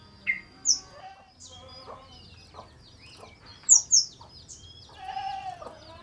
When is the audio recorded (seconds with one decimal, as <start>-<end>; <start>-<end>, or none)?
0.0-6.0